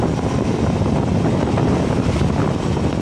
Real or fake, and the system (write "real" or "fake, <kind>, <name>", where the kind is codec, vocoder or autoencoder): real